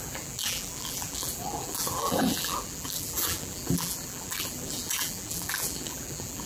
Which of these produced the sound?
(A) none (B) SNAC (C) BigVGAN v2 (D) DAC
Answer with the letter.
C